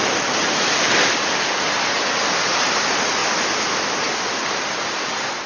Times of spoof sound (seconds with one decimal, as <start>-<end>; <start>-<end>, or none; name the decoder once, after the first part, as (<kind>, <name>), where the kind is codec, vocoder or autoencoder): none